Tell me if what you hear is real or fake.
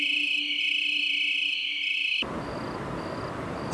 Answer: real